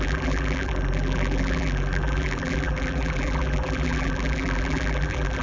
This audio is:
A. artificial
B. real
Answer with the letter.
A